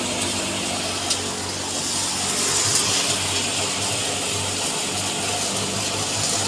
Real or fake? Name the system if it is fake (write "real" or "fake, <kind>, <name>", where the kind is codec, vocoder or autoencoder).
real